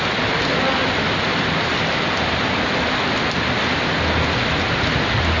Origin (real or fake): real